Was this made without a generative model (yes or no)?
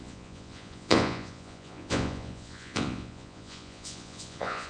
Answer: no